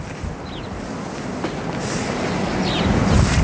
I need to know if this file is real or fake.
real